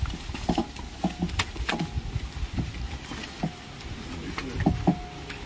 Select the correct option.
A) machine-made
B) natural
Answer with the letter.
B